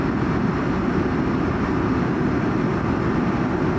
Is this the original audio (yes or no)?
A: yes